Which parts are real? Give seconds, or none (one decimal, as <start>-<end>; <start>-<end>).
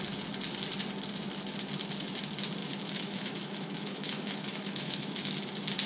0.0-2.6; 5.3-5.9